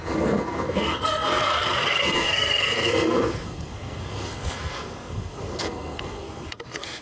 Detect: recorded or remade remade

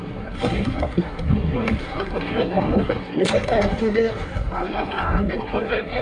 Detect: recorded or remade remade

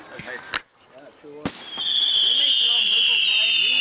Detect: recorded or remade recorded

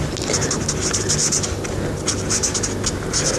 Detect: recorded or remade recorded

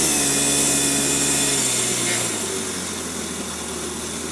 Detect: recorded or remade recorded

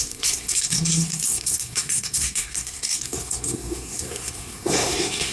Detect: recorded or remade remade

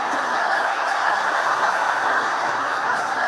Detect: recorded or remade remade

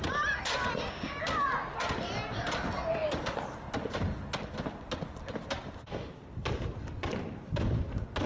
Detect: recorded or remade recorded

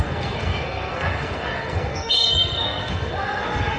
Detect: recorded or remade remade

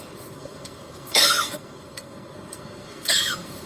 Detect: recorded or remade remade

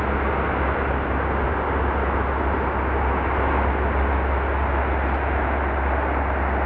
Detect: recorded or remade recorded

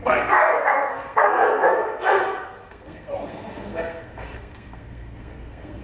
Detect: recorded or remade remade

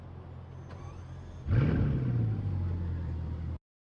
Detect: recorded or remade recorded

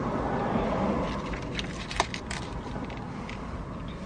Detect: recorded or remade recorded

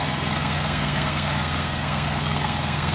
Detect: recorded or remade remade